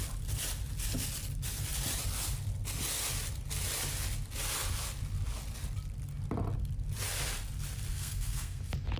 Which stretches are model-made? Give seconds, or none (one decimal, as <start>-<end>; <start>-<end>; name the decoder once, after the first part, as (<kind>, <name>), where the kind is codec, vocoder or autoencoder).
7.9-8.6 (codec, SNAC)